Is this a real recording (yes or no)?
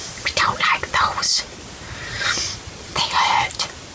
no